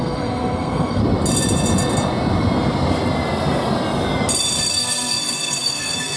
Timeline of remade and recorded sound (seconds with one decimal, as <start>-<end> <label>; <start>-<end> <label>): 0.0-1.0 remade; 1.0-4.7 recorded; 4.7-6.2 remade